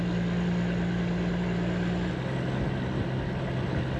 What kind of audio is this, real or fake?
real